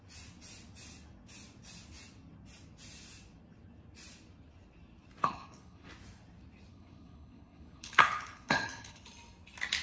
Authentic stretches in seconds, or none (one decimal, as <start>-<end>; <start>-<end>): 0.0-5.2; 5.9-6.7; 9.1-9.8